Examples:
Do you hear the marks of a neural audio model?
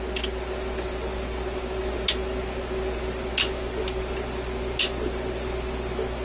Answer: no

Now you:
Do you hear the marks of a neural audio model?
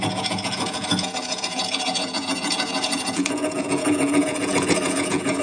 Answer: yes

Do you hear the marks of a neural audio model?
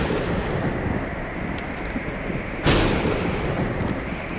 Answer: no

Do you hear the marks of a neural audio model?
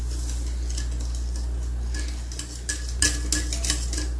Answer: no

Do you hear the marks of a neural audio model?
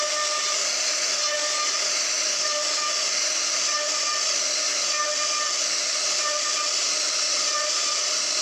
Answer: no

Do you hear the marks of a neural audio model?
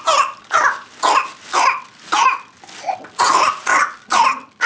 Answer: no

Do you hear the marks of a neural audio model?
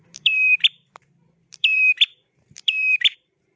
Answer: yes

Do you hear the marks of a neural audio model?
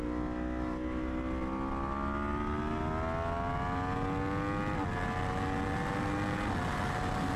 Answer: no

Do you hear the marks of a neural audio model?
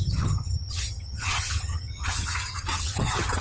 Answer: yes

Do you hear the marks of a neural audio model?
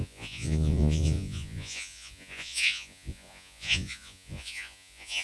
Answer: yes